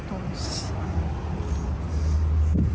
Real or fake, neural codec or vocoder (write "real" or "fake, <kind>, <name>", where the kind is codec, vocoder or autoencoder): real